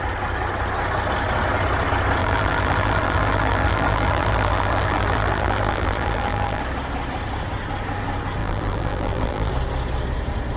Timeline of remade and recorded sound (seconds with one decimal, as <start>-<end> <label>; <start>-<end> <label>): 0.0-2.2 recorded; 2.2-6.6 remade; 6.6-8.4 recorded; 8.4-9.5 remade; 9.5-10.6 recorded